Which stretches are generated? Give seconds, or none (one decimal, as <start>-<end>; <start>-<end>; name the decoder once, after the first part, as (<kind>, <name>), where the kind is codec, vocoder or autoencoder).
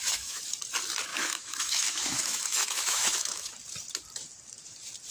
0.0-0.5 (autoencoder, DAC-VAE); 1.1-3.5